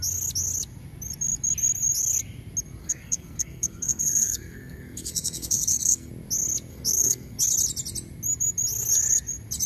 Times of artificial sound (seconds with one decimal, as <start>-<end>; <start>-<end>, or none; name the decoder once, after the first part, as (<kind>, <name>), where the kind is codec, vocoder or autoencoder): 2.8-6.1 (codec, SNAC); 6.7-7.4